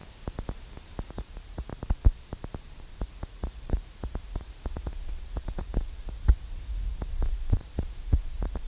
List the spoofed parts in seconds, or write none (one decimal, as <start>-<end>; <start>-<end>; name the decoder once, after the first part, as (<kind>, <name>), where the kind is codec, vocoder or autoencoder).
1.1-1.7 (vocoder, Vocos); 3.0-8.7